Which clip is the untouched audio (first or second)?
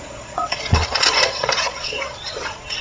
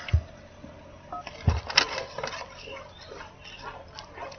second